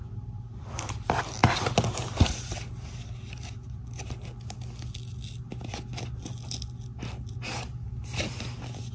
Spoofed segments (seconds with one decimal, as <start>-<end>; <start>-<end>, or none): 0.0-1.2